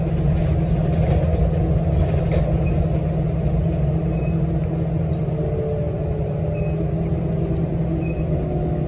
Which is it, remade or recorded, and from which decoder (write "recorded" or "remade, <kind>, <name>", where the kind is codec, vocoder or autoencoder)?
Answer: recorded